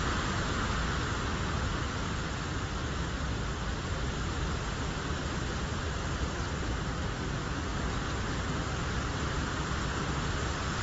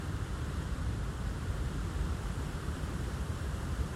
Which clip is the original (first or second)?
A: first